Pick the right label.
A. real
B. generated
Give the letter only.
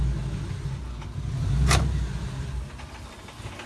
A